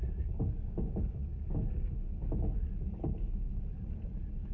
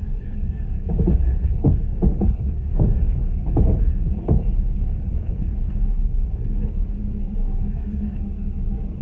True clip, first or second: first